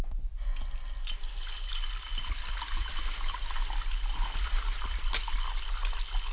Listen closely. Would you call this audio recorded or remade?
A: recorded